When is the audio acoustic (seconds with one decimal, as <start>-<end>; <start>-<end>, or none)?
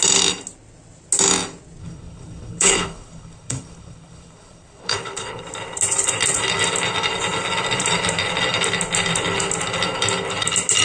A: 0.0-1.8; 5.4-10.8